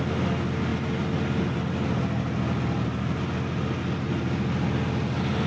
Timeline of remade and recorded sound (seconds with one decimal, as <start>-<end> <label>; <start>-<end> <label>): 0.0-5.5 recorded